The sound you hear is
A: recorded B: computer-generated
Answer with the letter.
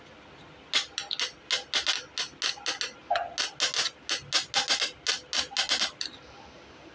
A